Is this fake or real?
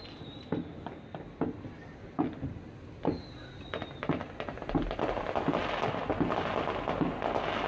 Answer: real